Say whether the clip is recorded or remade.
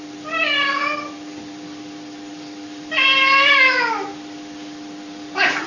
remade